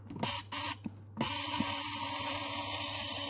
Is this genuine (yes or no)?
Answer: yes